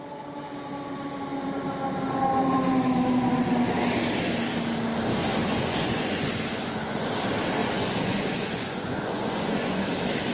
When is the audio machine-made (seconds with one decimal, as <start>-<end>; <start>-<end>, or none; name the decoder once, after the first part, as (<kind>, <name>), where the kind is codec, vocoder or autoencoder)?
5.2-7.1 (vocoder, Vocos); 7.6-9.8